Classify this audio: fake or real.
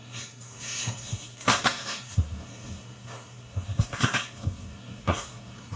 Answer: fake